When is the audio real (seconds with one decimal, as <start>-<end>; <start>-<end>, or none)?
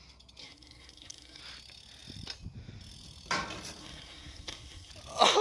0.0-0.4; 1.4-3.8; 4.9-5.4